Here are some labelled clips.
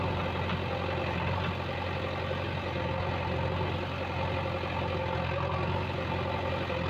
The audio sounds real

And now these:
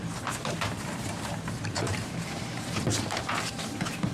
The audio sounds fake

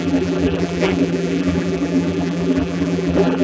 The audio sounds fake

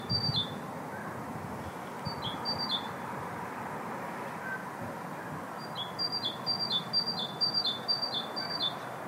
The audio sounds real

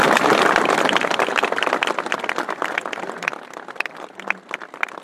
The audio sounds real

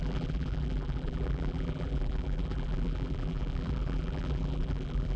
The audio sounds fake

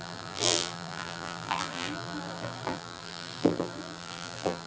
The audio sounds fake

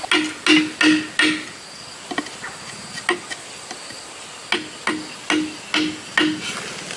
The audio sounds real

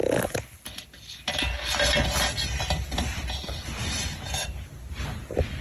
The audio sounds real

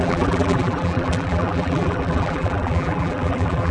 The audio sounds fake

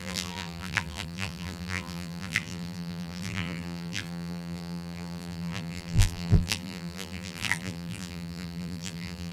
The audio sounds fake